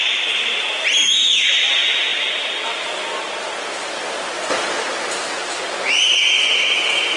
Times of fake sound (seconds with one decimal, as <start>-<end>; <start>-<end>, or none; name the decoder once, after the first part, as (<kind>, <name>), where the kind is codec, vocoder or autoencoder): 1.0-1.5 (autoencoder, DAC-VAE)